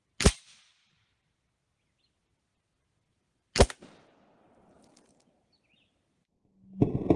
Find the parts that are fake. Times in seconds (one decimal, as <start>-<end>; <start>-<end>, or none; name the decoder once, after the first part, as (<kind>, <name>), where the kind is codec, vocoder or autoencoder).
none